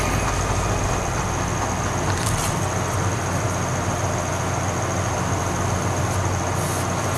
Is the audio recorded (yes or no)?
yes